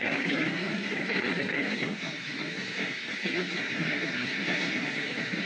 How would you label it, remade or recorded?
remade